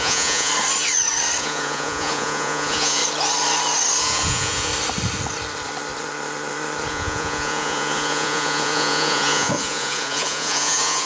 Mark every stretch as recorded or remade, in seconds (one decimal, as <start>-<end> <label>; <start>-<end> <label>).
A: 0.0-0.5 remade; 0.5-1.4 recorded; 1.4-3.0 remade; 3.0-4.0 recorded; 4.0-4.7 remade; 4.7-6.9 recorded; 6.9-11.1 remade